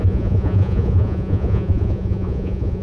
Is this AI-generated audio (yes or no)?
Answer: yes